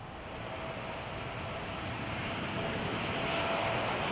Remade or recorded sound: recorded